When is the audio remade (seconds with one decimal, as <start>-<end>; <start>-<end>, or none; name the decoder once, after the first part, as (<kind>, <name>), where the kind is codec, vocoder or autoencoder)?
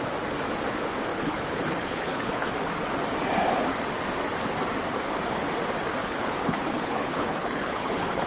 1.1-2.5 (codec, HILCodec); 6.0-8.3